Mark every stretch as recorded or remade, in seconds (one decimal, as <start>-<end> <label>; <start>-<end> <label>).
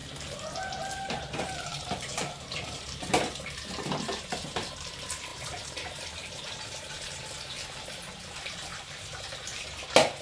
0.0-3.9 remade; 3.9-5.3 recorded; 5.3-7.2 remade; 7.2-8.7 recorded; 8.7-9.6 remade; 9.6-10.2 recorded